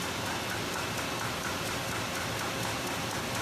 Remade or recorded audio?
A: recorded